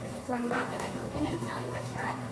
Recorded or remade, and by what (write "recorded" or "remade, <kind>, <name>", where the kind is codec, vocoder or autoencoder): remade, codec, SNAC